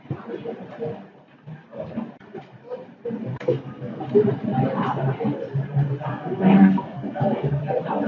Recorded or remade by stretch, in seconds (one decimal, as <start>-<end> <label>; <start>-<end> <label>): 0.0-3.3 recorded; 3.3-4.0 remade; 4.0-6.1 recorded; 6.1-7.6 remade; 7.6-8.1 recorded

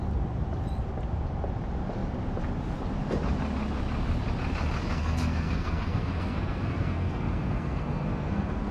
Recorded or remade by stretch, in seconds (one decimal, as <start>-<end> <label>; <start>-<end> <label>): 0.0-4.9 recorded; 4.9-8.7 remade

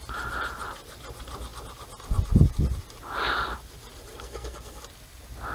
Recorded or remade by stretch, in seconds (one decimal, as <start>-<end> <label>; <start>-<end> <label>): 0.0-4.1 recorded; 4.1-4.8 remade; 4.8-5.5 recorded

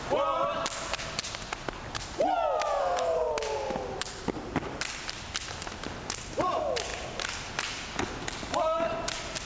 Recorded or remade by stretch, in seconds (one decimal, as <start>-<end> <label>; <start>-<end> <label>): 0.0-2.8 recorded; 2.8-3.3 remade; 3.3-9.5 recorded